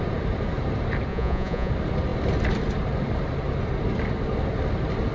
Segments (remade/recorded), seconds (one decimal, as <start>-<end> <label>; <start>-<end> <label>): 0.0-1.1 recorded; 1.1-1.7 remade; 1.7-5.1 recorded